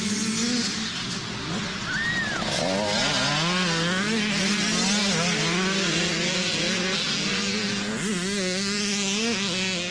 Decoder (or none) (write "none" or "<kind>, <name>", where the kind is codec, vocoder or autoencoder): none